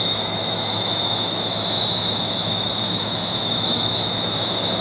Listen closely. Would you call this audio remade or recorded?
remade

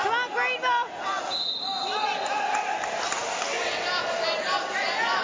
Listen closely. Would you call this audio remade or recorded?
recorded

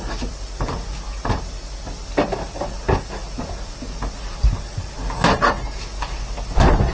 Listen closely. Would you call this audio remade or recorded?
recorded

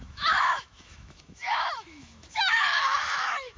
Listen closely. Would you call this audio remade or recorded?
remade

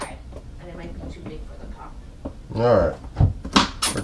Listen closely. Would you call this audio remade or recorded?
recorded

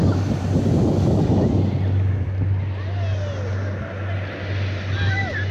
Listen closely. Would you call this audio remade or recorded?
recorded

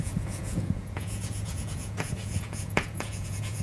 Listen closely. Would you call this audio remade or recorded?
remade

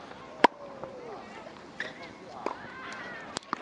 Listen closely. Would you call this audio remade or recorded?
remade